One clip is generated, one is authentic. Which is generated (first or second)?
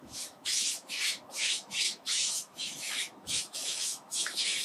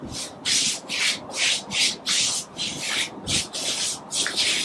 first